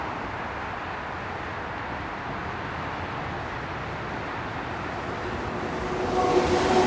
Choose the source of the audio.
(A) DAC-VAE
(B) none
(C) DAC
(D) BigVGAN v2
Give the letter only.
B